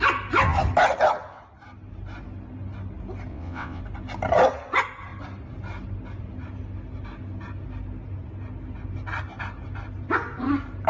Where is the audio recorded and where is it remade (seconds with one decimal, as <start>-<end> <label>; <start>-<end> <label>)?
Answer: 0.0-3.3 recorded; 3.3-3.8 remade; 3.8-10.9 recorded